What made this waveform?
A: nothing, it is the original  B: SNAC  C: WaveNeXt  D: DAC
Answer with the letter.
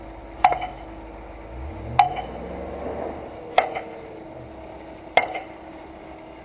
A